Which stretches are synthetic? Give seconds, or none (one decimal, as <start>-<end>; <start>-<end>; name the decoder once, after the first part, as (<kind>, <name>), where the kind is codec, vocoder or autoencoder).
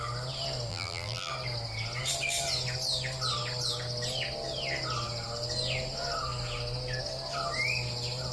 0.7-1.3 (vocoder, BigVGAN v2)